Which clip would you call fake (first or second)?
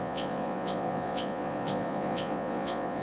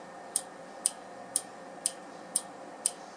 first